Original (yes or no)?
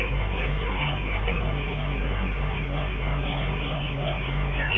no